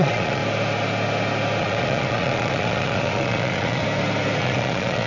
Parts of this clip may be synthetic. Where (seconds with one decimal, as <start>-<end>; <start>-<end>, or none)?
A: 0.0-0.4; 1.6-3.8; 4.4-5.1